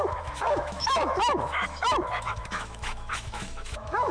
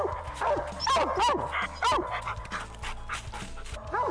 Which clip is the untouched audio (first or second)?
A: second